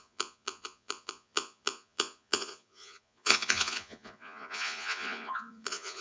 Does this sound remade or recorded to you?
remade